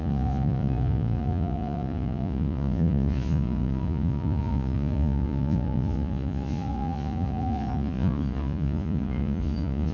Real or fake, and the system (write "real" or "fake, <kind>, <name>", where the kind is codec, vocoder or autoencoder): fake, vocoder, Vocos